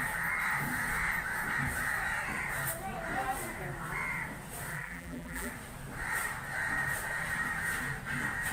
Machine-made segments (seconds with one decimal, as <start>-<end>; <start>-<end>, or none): 4.7-5.5